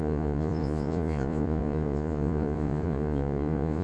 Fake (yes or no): yes